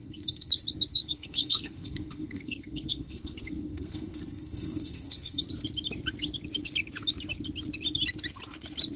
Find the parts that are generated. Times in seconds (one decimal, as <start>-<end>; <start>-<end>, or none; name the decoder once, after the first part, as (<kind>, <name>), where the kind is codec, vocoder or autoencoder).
0.0-0.5 (codec, SNAC); 0.9-5.4